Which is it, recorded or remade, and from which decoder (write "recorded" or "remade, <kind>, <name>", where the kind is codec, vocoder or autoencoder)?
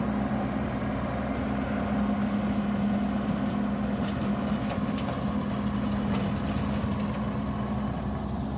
recorded